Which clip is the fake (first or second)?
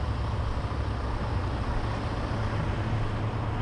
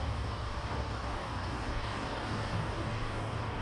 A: second